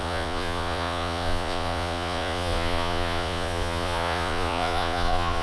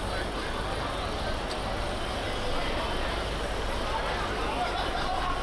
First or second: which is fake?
first